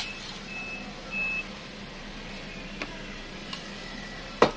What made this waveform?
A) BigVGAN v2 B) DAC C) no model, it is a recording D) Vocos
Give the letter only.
C